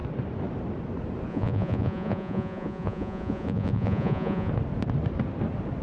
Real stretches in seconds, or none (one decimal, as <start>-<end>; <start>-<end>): 0.0-1.3; 4.5-5.8